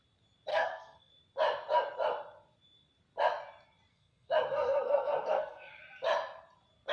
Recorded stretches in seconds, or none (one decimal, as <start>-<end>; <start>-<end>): 0.0-0.5; 1.1-3.9; 5.8-6.9